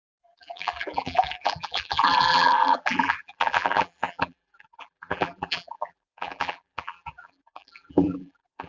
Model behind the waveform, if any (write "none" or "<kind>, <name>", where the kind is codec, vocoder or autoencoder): vocoder, BigVGAN v2